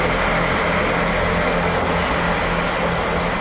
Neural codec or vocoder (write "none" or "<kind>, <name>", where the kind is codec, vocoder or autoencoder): none